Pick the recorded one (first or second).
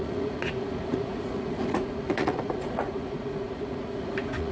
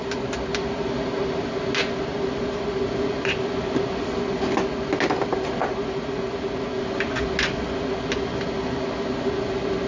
second